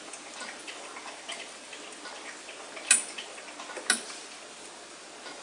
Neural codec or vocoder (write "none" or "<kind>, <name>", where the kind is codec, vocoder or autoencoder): none